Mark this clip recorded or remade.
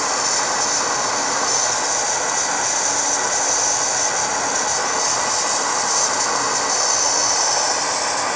recorded